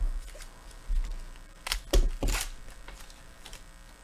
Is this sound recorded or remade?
recorded